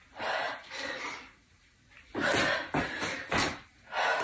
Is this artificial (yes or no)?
no